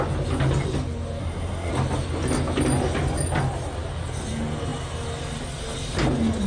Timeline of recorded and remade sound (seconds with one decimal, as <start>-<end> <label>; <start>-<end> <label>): 0.0-1.2 recorded; 1.2-1.7 remade; 1.7-6.5 recorded